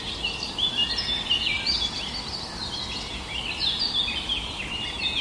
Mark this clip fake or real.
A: real